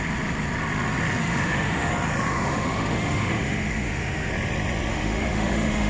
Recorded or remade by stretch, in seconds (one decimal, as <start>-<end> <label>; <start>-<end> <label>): 0.0-1.2 recorded; 1.2-1.9 remade; 1.9-2.3 recorded; 2.3-4.3 remade; 4.3-4.9 recorded; 4.9-5.9 remade